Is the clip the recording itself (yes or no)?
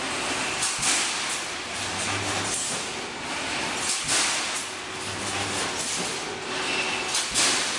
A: yes